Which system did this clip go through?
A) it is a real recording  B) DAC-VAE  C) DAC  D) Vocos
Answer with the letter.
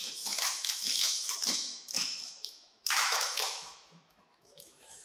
B